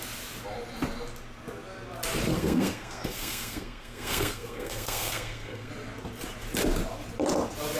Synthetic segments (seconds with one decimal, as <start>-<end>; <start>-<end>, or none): 2.3-5.7